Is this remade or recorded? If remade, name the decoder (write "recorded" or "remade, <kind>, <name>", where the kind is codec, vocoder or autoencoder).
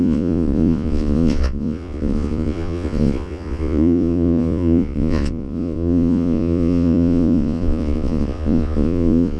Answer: remade, vocoder, Vocos